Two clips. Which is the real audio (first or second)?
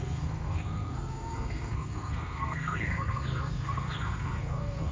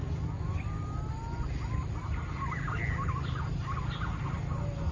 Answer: second